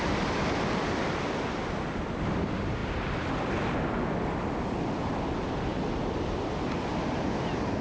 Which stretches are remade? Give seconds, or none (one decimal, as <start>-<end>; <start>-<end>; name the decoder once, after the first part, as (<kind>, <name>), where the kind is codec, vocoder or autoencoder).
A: none